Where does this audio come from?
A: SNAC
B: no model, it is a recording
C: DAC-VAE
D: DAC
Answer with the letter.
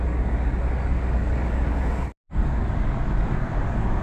D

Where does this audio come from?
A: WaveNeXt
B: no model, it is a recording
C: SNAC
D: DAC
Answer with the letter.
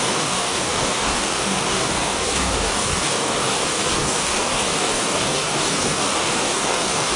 D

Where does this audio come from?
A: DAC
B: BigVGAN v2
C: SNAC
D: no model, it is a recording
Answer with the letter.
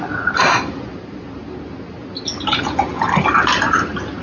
D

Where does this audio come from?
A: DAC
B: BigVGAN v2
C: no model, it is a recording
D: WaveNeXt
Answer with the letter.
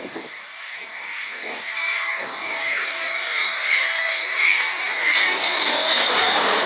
A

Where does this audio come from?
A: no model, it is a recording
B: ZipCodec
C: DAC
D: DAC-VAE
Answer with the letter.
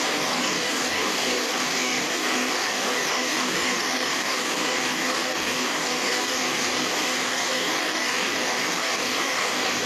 C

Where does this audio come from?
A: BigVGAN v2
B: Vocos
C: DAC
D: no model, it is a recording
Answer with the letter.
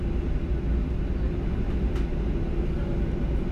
D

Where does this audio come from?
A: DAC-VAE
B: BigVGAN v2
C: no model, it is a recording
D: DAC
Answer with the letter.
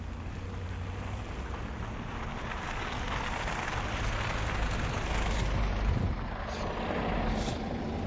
C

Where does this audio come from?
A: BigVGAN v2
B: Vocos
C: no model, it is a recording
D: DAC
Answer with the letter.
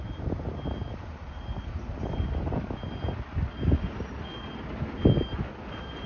C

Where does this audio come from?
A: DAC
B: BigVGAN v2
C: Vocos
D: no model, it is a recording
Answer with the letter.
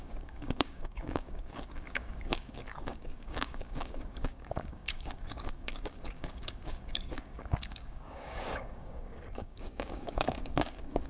A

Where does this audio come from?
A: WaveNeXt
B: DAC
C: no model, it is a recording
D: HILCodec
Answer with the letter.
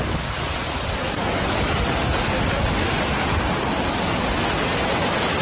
C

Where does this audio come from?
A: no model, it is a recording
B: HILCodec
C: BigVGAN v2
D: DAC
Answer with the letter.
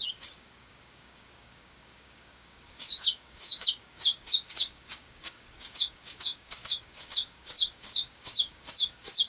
D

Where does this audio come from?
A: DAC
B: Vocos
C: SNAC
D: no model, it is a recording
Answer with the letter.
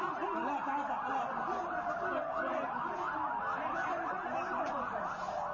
D